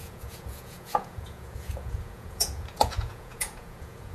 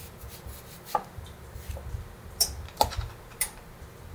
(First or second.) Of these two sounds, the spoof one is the first